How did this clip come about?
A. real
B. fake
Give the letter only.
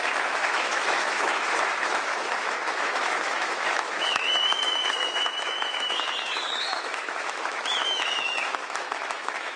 B